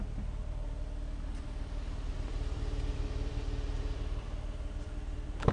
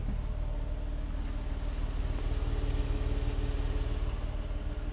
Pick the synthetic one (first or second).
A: first